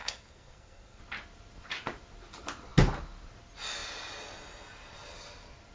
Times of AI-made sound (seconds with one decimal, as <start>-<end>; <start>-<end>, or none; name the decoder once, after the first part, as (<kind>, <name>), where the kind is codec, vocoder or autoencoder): 0.0-1.0 (codec, SNAC)